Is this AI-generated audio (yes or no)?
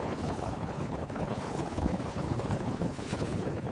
yes